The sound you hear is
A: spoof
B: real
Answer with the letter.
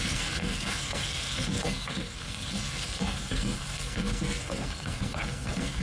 A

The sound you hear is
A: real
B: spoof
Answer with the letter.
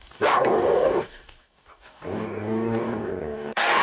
B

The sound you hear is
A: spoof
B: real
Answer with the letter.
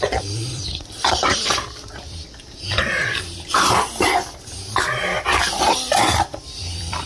A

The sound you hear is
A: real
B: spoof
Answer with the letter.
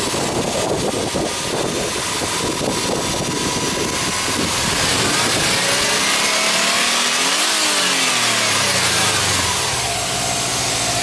A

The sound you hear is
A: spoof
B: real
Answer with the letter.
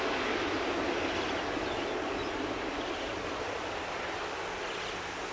B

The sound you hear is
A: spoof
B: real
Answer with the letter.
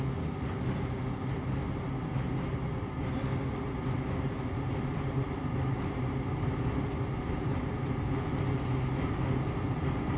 B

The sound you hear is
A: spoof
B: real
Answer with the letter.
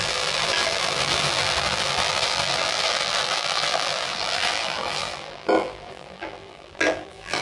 A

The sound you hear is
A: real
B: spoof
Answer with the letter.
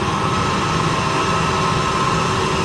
A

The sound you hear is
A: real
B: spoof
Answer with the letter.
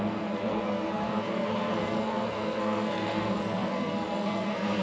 B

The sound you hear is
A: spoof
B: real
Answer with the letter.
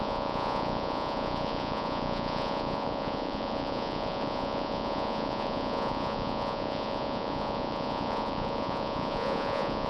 A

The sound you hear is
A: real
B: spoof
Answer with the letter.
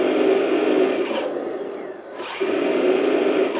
B